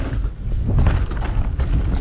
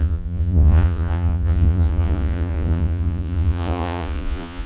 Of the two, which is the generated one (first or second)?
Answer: second